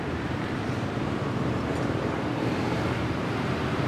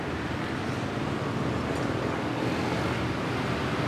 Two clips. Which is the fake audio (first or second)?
first